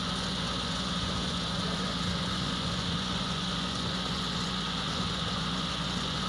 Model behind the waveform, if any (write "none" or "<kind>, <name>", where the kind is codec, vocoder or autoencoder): vocoder, Vocos